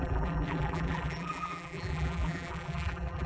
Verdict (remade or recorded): remade